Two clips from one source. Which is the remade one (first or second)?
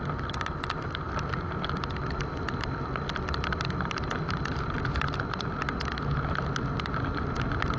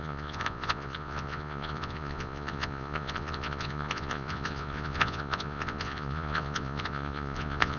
second